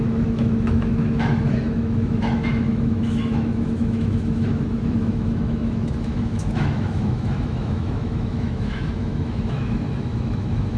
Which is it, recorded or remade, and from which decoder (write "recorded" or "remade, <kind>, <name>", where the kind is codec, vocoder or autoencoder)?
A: remade, autoencoder, DAC-VAE